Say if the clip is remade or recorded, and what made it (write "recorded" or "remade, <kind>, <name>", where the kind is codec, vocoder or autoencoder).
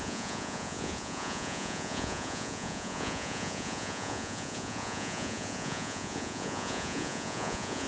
remade, vocoder, Vocos